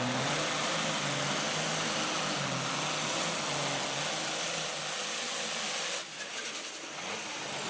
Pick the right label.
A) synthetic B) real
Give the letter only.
B